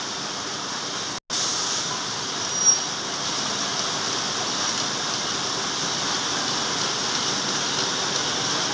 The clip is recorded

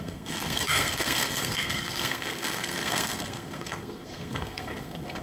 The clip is remade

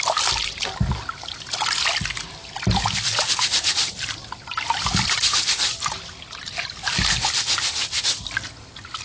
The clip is recorded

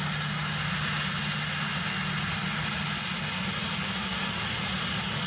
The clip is recorded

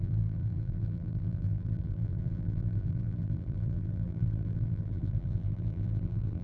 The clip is remade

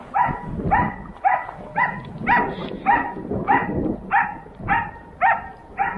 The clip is recorded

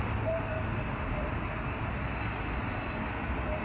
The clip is recorded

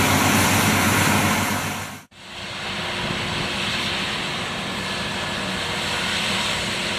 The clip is recorded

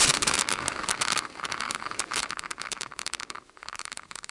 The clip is remade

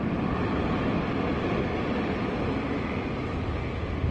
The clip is recorded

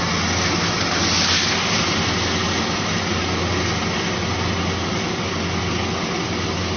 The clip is recorded